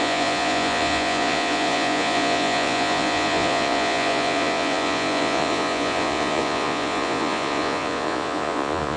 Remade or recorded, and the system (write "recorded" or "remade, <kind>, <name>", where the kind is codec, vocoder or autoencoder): remade, vocoder, Vocos